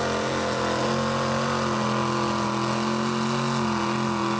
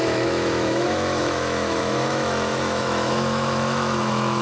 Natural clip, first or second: first